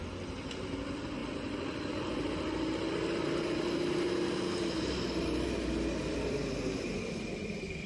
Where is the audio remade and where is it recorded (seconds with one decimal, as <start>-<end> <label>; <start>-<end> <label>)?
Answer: 0.0-7.9 remade